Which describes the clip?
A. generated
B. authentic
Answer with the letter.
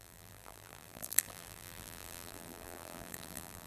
A